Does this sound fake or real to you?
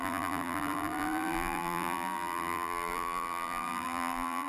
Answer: fake